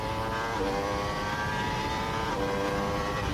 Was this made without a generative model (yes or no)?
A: no